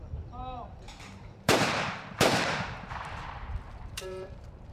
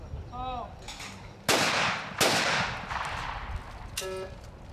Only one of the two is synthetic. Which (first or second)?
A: first